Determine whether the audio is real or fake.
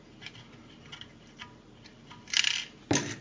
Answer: real